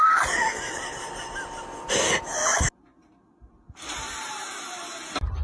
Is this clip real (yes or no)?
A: yes